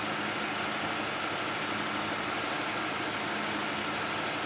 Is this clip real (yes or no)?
yes